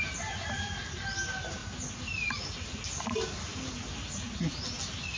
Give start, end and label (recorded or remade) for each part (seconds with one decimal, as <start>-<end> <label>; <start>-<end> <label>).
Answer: 0.0-5.2 recorded

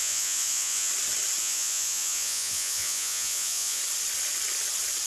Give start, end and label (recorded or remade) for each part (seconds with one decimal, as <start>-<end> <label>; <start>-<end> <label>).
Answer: 0.0-0.9 remade; 0.9-1.4 recorded; 1.4-3.8 remade; 3.8-5.1 recorded

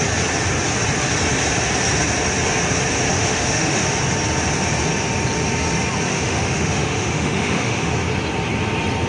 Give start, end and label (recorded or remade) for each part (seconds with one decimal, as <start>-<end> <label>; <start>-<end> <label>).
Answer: 0.0-3.1 recorded; 3.1-3.8 remade; 3.8-6.1 recorded; 6.1-7.9 remade; 7.9-9.1 recorded

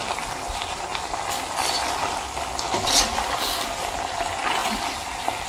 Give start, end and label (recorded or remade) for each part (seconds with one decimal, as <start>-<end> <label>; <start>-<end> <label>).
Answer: 0.0-5.5 recorded

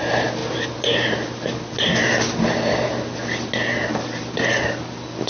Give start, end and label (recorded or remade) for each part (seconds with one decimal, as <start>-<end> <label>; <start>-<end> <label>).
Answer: 0.0-5.3 recorded

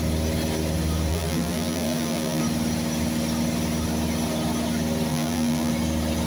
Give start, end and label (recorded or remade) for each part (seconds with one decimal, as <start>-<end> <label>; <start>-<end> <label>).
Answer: 0.0-1.1 recorded; 1.1-2.4 remade; 2.4-5.1 recorded; 5.1-5.7 remade; 5.7-6.3 recorded

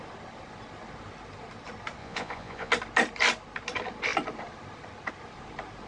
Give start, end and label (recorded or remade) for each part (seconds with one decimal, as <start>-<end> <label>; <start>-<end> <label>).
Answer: 0.0-2.0 recorded; 2.0-2.7 remade; 2.7-5.9 recorded

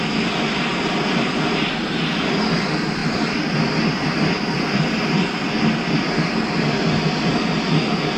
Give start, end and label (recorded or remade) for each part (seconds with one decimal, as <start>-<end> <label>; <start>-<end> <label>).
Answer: 0.0-8.2 recorded